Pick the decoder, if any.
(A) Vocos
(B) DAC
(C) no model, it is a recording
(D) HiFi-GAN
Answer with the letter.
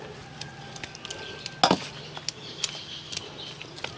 C